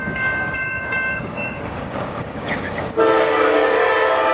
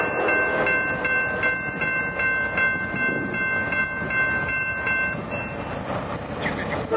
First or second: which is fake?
first